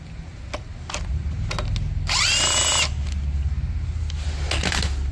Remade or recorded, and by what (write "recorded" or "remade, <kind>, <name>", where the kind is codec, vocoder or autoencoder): recorded